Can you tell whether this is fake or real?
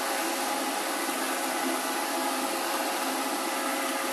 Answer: real